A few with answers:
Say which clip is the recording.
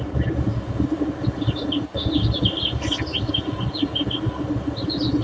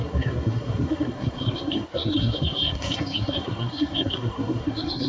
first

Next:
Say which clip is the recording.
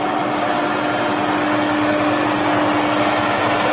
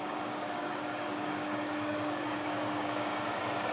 first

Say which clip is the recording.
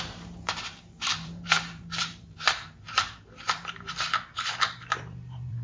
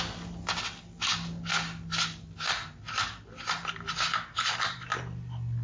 second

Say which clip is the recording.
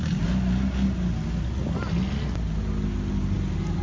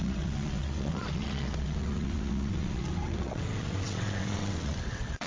first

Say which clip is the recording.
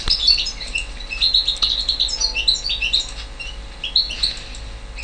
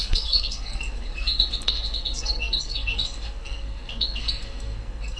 first